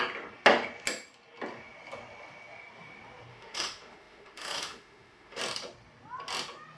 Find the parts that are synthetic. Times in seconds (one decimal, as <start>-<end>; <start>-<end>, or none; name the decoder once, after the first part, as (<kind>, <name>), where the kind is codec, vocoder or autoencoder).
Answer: 3.3-5.4 (autoencoder, DAC-VAE)